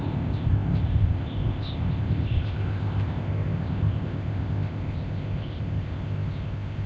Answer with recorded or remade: remade